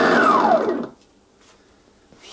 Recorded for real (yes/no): yes